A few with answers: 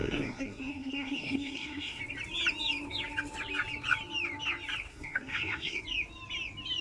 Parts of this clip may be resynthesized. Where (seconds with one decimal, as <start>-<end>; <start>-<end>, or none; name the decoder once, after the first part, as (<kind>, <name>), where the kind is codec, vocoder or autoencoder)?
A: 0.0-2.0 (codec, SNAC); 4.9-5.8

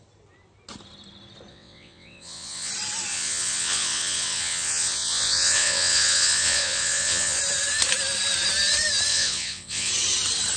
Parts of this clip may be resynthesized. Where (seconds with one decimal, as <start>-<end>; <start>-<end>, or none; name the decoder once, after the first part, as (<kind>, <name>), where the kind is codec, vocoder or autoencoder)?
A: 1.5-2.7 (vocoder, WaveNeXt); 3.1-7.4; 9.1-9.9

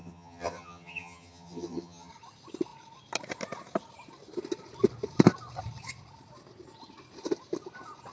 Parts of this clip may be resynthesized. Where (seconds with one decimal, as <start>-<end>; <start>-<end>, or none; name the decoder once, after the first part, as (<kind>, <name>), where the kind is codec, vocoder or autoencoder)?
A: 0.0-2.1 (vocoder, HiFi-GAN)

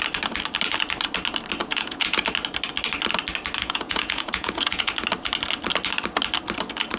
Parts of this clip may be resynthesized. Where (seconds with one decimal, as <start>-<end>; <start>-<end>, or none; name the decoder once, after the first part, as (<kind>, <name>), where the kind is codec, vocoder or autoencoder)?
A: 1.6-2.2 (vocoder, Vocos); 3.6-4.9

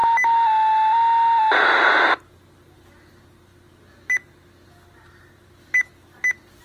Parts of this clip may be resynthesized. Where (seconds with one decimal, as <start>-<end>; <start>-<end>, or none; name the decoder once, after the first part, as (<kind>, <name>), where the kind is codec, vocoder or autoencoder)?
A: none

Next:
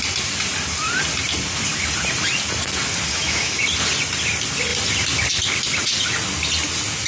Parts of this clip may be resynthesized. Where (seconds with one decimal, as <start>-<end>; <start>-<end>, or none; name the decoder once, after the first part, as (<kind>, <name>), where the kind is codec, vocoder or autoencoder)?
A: 3.1-3.6 (autoencoder, DAC-VAE)

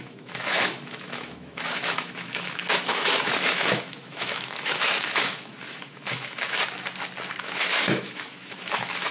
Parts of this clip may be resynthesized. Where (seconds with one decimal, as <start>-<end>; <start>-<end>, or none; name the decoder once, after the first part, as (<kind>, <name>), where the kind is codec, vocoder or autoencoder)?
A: 0.0-6.6 (autoencoder, DAC-VAE); 7.4-9.1

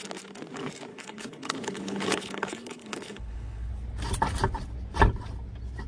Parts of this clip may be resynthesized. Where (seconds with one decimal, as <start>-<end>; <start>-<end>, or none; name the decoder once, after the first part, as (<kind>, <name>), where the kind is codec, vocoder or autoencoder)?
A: 0.9-3.7 (codec, HILCodec)